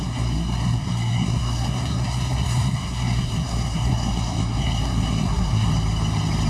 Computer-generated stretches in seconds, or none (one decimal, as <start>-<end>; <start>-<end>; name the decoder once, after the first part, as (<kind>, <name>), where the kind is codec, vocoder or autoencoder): 0.0-5.7 (codec, SNAC)

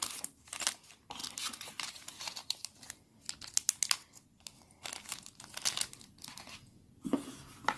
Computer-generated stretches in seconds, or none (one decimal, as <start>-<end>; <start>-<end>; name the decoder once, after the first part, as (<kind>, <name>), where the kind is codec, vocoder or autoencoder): none